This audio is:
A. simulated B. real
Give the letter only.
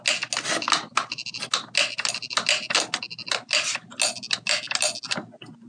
B